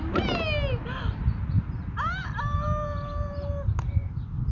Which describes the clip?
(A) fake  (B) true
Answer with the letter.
B